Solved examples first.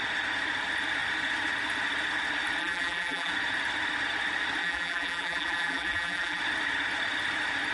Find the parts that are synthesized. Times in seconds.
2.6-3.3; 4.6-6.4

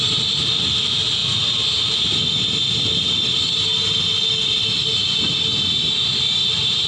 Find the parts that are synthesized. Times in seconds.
6.1-6.9

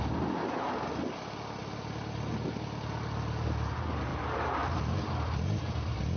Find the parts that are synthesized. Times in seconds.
4.1-5.0